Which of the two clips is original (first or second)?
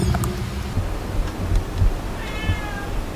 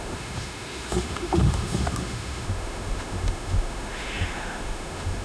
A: first